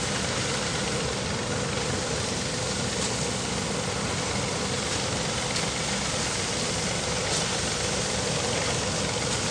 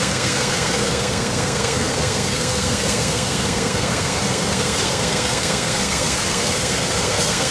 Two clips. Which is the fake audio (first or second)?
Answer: second